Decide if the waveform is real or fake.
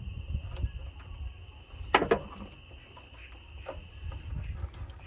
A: real